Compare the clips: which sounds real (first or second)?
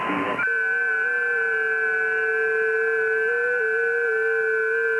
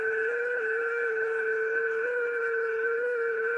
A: first